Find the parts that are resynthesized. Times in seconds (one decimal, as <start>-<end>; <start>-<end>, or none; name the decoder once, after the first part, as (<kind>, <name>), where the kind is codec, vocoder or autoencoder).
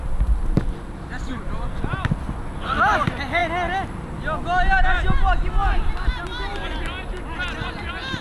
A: none